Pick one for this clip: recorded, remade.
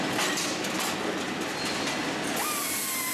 recorded